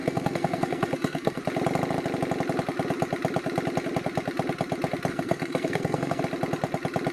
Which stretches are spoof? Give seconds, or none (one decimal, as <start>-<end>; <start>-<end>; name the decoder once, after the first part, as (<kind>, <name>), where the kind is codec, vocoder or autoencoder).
0.0-1.4 (codec, SNAC); 5.1-6.2